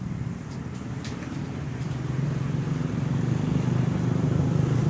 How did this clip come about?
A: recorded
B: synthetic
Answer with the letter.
B